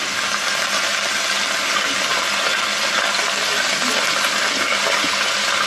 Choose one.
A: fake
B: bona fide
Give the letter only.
B